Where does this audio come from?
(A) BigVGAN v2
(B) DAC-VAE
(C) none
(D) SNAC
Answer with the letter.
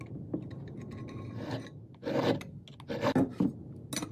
C